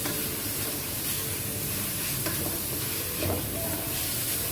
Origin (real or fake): fake